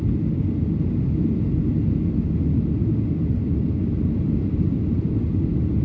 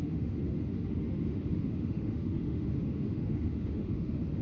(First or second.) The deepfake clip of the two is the second